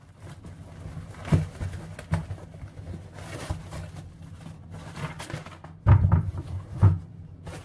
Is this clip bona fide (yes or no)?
yes